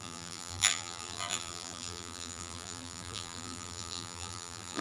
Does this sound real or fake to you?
fake